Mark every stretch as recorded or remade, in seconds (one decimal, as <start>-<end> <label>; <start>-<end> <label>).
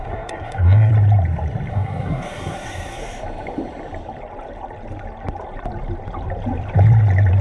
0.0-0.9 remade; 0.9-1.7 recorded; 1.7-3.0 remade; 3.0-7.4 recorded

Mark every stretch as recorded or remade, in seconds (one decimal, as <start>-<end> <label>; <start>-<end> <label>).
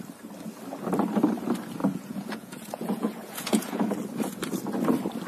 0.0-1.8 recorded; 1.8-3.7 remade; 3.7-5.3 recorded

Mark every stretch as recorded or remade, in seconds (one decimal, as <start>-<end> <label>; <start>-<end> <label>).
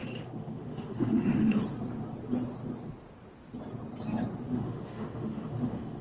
0.0-1.6 remade; 1.6-4.5 recorded; 4.5-6.0 remade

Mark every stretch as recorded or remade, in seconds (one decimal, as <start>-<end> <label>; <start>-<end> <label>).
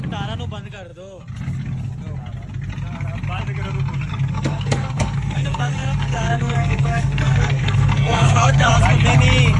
0.0-4.1 recorded; 4.1-8.7 remade; 8.7-9.6 recorded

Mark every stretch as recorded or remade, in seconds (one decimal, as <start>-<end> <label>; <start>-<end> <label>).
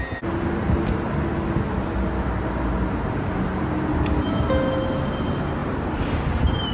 0.0-5.6 recorded; 5.6-6.7 remade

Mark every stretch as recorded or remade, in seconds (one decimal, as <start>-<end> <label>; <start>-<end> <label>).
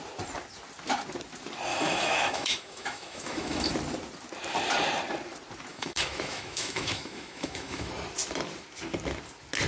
0.0-1.7 recorded; 1.7-3.7 remade; 3.7-5.7 recorded; 5.7-7.9 remade; 7.9-9.7 recorded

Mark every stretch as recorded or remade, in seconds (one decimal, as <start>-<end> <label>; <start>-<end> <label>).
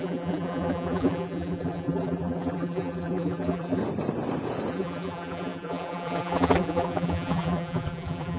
0.0-3.8 remade; 3.8-4.7 recorded; 4.7-8.4 remade